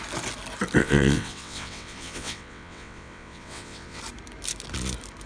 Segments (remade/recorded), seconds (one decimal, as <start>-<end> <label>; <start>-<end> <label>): 0.0-0.8 recorded; 0.8-4.0 remade; 4.0-5.3 recorded